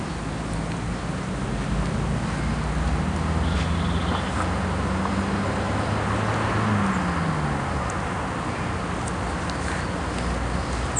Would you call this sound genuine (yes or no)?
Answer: yes